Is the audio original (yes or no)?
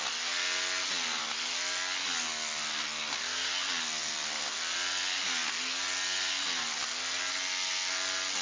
yes